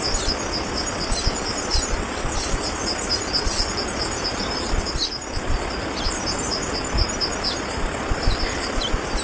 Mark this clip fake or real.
fake